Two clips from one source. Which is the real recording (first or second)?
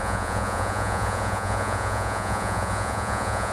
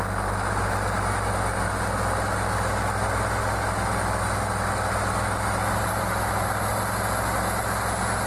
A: second